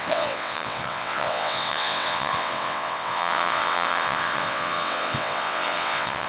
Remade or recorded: remade